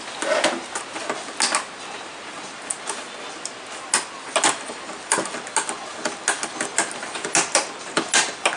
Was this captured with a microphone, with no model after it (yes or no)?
yes